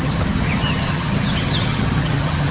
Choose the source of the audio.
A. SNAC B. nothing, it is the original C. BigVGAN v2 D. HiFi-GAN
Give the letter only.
D